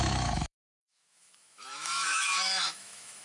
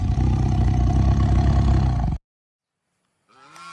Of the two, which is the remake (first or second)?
first